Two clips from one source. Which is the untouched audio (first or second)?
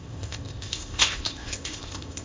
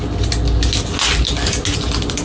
second